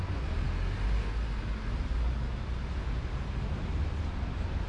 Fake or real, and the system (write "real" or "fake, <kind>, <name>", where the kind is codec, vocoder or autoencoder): real